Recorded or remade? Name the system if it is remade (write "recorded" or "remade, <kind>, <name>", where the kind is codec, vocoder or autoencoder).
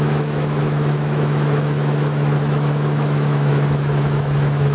remade, autoencoder, DAC-VAE